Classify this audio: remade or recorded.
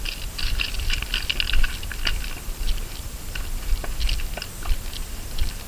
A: recorded